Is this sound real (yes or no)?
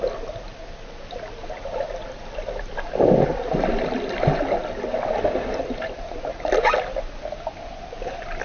yes